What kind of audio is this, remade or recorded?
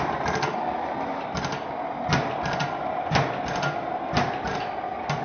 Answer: recorded